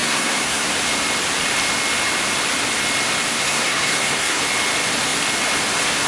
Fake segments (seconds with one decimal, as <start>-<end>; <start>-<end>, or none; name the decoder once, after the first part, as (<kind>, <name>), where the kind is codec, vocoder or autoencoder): 0.0-0.7 (codec, SNAC); 3.3-4.4